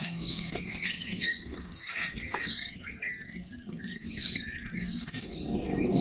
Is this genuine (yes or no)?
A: no